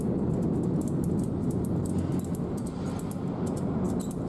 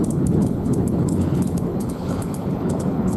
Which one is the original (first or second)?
first